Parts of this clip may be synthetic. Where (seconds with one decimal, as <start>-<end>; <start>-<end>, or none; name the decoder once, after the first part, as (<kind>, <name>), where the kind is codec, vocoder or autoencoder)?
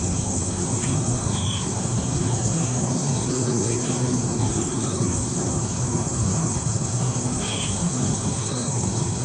0.0-9.2 (codec, SNAC)